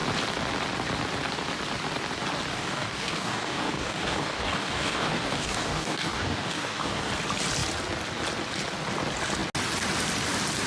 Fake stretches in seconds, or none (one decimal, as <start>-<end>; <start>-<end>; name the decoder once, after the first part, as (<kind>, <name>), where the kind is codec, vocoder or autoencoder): 2.5-7.1 (codec, DAC)